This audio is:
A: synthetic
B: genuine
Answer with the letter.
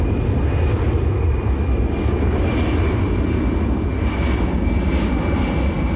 B